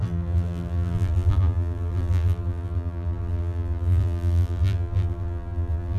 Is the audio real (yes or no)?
no